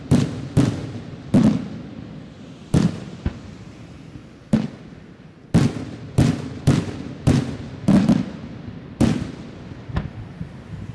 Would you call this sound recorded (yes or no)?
yes